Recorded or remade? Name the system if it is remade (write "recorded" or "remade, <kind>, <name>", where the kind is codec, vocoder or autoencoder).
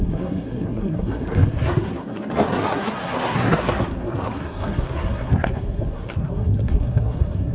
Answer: remade, codec, SNAC